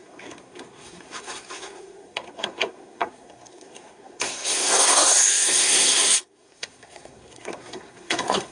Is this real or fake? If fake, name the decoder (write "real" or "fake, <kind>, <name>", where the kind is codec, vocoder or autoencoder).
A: fake, codec, SNAC